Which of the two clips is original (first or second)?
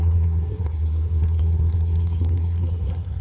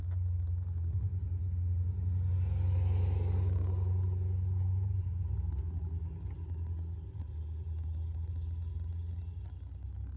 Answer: second